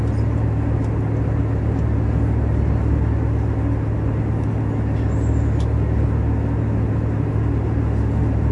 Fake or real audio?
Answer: real